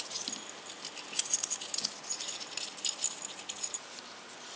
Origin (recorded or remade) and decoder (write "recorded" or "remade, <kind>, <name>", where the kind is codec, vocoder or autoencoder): recorded